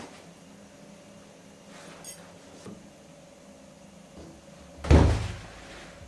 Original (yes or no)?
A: yes